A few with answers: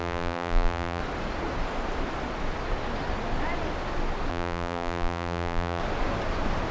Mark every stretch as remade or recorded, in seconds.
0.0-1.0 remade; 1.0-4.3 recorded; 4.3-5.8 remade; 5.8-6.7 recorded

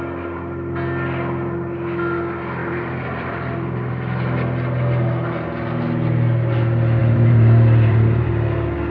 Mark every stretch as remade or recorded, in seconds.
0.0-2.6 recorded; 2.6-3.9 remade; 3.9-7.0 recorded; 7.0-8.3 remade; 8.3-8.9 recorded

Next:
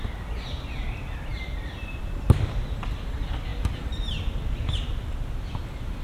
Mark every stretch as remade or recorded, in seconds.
0.0-1.3 recorded; 1.3-2.0 remade; 2.0-3.5 recorded; 3.5-4.5 remade; 4.5-6.0 recorded

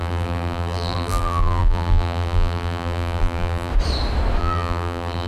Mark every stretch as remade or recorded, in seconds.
0.0-3.7 remade; 3.7-4.4 recorded; 4.4-5.3 remade

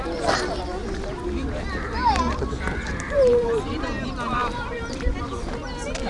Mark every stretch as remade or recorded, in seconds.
0.0-0.8 recorded; 0.8-3.8 remade; 3.8-4.4 recorded; 4.4-5.2 remade; 5.2-6.1 recorded

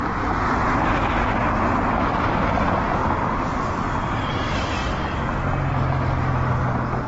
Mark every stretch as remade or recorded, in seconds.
0.0-3.0 recorded; 3.0-4.3 remade; 4.3-7.1 recorded